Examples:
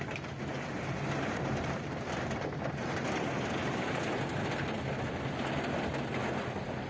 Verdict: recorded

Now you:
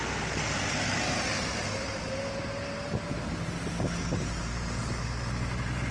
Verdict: recorded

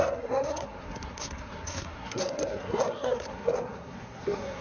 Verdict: remade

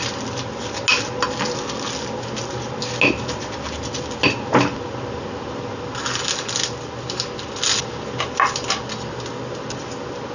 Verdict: recorded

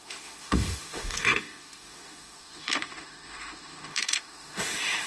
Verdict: remade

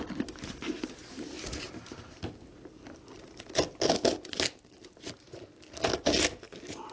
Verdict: recorded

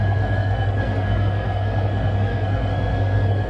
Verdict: remade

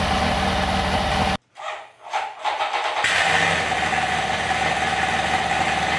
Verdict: recorded